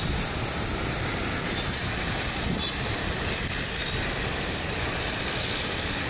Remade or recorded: recorded